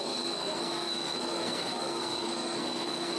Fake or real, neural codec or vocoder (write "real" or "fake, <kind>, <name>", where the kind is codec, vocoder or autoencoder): fake, codec, SNAC